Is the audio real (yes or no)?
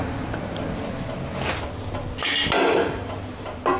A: yes